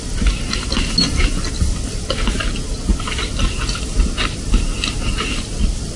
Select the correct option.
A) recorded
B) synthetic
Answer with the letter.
A